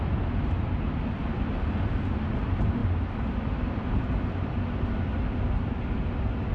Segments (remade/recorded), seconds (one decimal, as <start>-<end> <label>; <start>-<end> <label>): 0.0-6.5 recorded